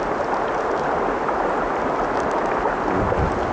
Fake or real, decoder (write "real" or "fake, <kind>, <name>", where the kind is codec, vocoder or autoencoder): real